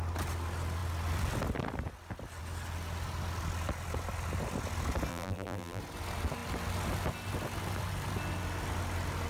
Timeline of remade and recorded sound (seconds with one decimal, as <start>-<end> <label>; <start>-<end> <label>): 0.0-5.1 recorded; 5.1-5.8 remade; 5.8-9.3 recorded